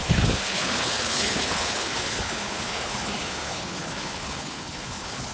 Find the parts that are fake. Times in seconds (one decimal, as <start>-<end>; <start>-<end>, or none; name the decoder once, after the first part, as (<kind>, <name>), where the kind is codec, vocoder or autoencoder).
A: 0.0-5.3 (codec, HILCodec)